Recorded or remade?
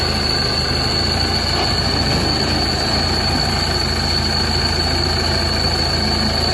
recorded